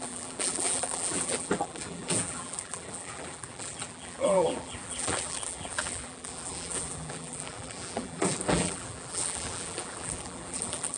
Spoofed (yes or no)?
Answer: yes